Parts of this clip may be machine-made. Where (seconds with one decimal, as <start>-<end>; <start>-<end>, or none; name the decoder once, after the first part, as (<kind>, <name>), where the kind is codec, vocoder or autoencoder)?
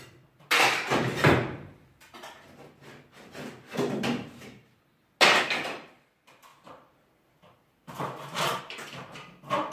none